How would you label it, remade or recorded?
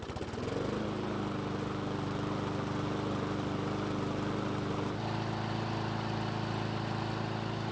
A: recorded